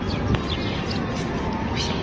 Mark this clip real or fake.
real